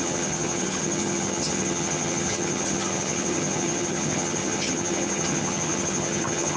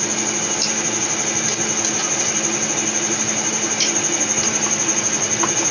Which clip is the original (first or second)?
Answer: second